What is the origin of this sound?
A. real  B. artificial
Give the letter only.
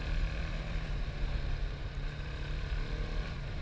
B